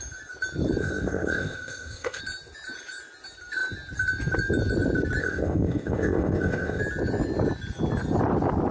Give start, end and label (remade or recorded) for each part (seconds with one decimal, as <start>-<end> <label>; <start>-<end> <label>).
0.0-0.8 recorded; 0.8-2.2 remade; 2.2-5.2 recorded; 5.2-6.8 remade; 6.8-8.7 recorded